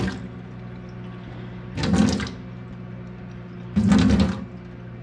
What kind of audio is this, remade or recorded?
recorded